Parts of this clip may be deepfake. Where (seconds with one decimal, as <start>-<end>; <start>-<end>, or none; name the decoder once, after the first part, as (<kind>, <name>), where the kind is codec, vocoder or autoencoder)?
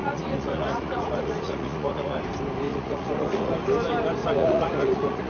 0.0-2.2 (vocoder, Vocos); 2.7-3.5; 4.2-5.3